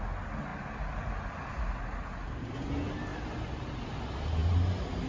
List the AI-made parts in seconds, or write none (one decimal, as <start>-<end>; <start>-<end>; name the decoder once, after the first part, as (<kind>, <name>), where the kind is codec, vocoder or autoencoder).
3.1-4.0 (vocoder, BigVGAN v2); 4.4-5.1

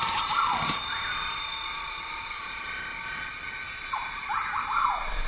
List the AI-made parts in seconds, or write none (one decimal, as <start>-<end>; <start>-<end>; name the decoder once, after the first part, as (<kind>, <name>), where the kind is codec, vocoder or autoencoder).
1.5-3.3 (vocoder, BigVGAN v2); 3.7-4.3

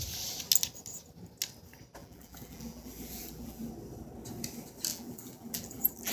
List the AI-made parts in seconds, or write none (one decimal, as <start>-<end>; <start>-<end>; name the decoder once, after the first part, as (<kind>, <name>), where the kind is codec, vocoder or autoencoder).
2.0-3.7 (vocoder, BigVGAN v2); 4.9-6.1

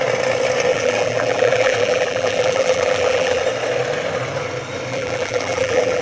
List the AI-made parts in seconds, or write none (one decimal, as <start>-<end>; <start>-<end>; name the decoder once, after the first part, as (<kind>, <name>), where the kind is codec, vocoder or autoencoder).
0.7-3.4 (vocoder, BigVGAN v2); 4.9-6.0